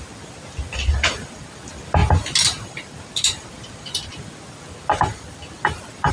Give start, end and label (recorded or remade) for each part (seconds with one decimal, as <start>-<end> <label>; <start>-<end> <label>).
0.0-6.1 recorded